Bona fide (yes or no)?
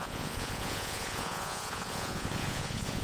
no